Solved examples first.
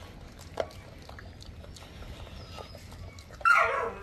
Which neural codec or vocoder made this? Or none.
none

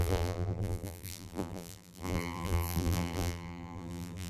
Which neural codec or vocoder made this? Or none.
vocoder, BigVGAN v2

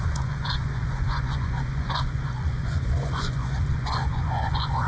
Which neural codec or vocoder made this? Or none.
vocoder, Vocos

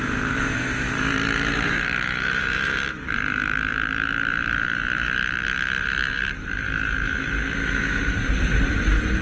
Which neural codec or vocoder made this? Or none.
vocoder, BigVGAN v2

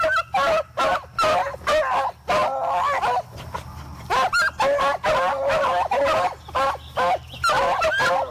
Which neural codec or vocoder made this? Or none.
none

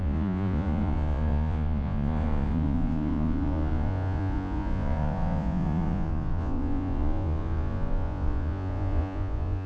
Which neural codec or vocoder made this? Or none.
vocoder, Vocos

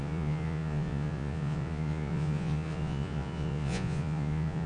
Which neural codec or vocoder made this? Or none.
vocoder, Vocos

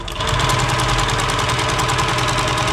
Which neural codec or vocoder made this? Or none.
none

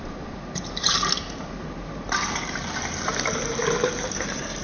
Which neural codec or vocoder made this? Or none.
vocoder, BigVGAN v2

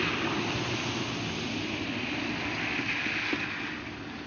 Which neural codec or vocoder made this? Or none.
none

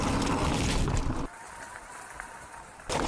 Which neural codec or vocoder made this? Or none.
none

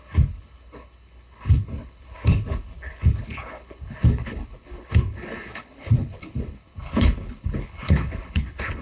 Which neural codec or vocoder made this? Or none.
codec, HILCodec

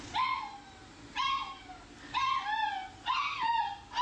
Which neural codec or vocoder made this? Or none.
none